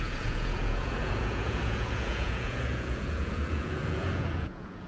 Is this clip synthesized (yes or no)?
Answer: yes